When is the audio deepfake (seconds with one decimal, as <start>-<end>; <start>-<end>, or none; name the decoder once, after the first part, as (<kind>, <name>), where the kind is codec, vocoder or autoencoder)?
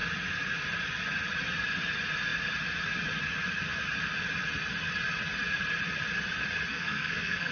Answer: 6.7-7.5 (codec, SNAC)